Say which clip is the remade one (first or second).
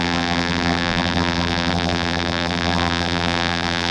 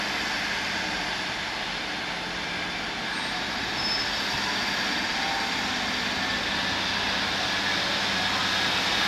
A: first